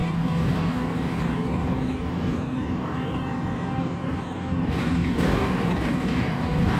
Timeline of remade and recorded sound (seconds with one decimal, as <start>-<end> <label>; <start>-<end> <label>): 0.0-6.8 remade